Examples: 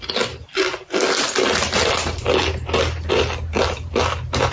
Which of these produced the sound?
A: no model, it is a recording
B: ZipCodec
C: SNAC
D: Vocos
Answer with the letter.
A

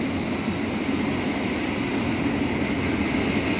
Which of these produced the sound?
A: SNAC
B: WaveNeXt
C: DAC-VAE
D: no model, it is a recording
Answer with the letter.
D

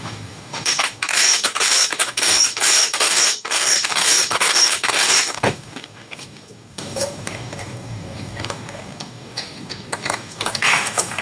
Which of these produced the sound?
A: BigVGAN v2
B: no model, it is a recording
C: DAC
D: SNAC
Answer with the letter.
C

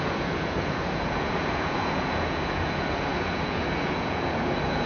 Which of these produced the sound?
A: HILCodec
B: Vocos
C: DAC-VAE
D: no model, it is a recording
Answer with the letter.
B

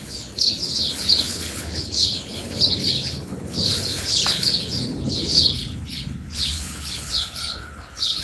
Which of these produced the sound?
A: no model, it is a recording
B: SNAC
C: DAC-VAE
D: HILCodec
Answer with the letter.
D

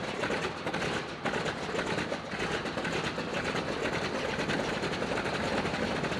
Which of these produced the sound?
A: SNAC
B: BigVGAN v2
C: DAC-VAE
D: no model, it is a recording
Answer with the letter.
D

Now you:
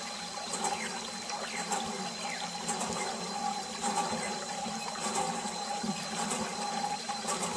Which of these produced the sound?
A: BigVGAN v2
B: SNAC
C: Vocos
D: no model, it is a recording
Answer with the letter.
D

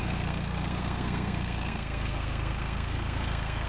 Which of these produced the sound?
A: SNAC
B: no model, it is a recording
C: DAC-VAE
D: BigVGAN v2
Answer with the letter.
A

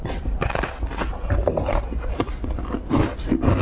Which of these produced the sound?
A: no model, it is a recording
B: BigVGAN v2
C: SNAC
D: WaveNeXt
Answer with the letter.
A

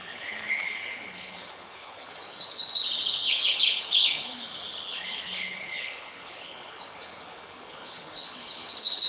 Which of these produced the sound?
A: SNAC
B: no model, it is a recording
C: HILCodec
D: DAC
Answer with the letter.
C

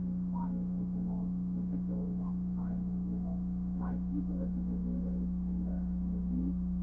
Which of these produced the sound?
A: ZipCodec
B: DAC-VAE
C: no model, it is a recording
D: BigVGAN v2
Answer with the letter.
B